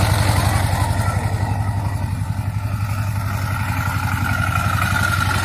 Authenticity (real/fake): real